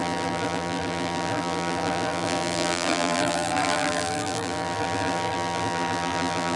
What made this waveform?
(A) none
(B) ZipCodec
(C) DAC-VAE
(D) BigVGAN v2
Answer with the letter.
D